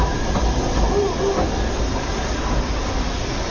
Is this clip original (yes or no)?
yes